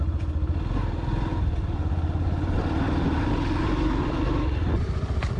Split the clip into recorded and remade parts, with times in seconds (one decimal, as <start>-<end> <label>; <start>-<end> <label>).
0.0-1.3 remade; 1.3-4.0 recorded; 4.0-5.4 remade

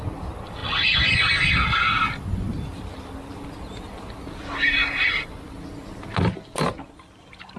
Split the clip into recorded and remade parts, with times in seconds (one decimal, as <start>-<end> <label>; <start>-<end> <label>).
0.0-7.6 recorded

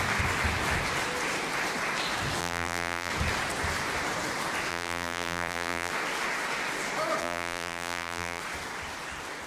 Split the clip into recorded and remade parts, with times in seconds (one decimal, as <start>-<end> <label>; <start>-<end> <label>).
0.0-2.4 recorded; 2.4-3.1 remade; 3.1-4.7 recorded; 4.7-5.9 remade; 5.9-7.2 recorded; 7.2-8.4 remade; 8.4-9.5 recorded

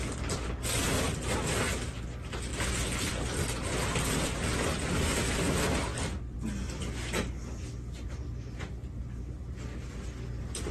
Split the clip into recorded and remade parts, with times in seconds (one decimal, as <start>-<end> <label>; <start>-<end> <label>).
0.0-10.7 recorded